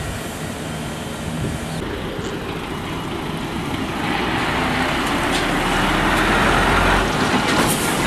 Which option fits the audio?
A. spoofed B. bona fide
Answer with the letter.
B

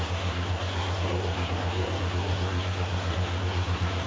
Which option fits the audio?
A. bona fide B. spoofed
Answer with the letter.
B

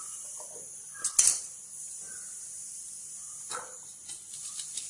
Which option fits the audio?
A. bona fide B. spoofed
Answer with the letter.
A